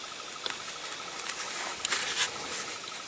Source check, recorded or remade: recorded